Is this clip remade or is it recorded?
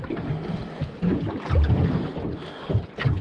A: recorded